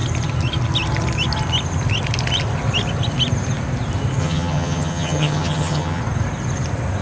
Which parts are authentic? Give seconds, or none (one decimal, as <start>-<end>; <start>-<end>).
0.0-4.2; 6.0-7.0